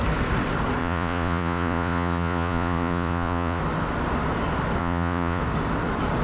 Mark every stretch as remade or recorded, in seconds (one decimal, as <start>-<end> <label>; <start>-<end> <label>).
0.0-0.8 recorded; 0.8-3.6 remade; 3.6-4.8 recorded; 4.8-5.4 remade; 5.4-6.2 recorded